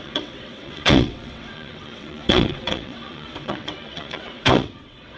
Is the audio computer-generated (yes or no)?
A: yes